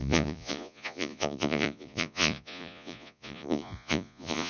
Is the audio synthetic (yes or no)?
yes